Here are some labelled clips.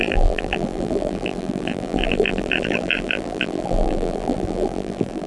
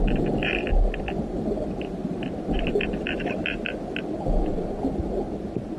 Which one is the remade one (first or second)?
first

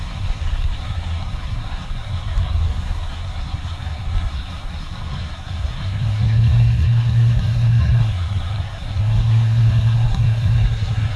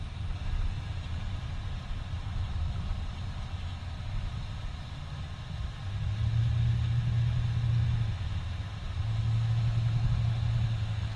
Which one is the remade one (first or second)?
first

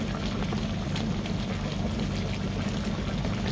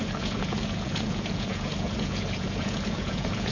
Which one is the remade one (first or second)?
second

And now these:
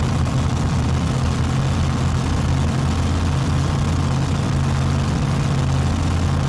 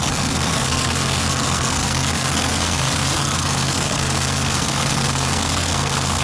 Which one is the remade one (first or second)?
second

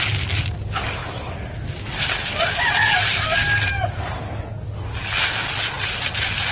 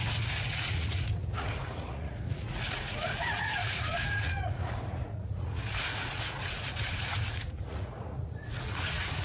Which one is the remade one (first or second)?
second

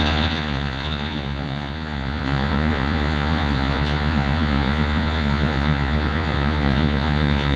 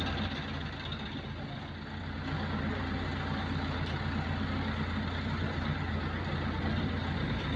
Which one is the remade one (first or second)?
first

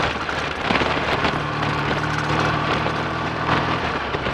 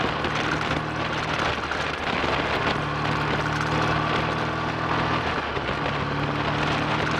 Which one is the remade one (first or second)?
first